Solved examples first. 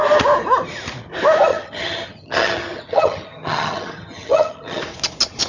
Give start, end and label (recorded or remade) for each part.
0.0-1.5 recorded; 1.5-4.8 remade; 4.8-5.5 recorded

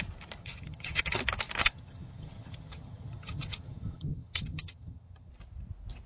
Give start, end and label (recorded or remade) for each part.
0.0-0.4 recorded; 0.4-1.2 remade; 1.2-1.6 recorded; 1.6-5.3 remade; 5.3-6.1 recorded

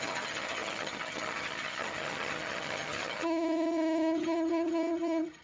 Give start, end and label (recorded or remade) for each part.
0.0-5.4 remade

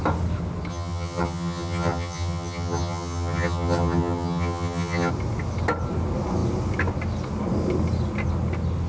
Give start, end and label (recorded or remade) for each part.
0.0-0.7 recorded; 0.7-5.1 remade; 5.1-8.9 recorded

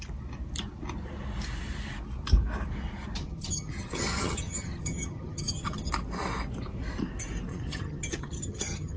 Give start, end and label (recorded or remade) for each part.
0.0-3.2 recorded; 3.2-5.9 remade; 5.9-7.5 recorded; 7.5-9.0 remade